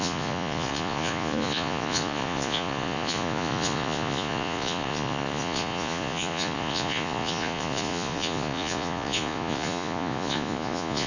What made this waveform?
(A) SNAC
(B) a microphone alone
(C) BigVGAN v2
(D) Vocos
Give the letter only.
D